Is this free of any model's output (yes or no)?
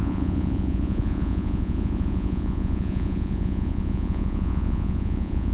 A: no